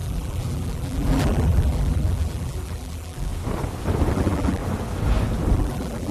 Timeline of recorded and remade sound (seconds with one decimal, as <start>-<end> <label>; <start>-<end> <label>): 0.0-3.3 remade; 3.3-4.1 recorded; 4.1-4.6 remade; 4.6-5.5 recorded; 5.5-6.1 remade